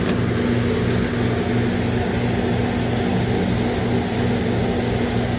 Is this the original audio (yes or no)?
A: yes